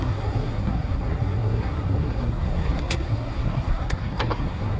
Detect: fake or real fake